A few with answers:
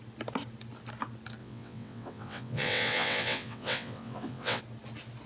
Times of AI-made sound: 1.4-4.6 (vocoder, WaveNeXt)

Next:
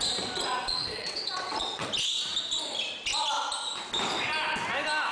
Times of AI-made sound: 0.6-1.9 (vocoder, WaveNeXt)

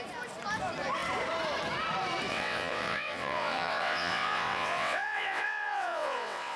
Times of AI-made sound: 2.3-6.6 (vocoder, WaveNeXt)

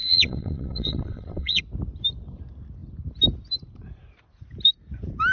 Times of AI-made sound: 0.0-1.6 (vocoder, WaveNeXt)

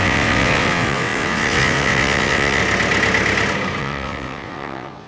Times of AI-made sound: 0.0-2.6 (vocoder, WaveNeXt); 3.8-5.1

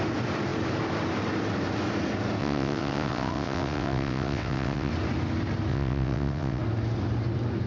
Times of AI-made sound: 2.4-4.9 (vocoder, WaveNeXt); 5.7-6.6